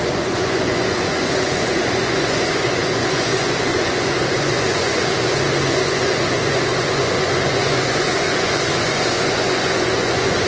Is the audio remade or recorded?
remade